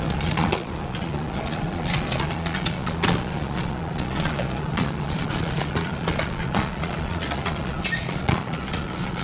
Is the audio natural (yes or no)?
no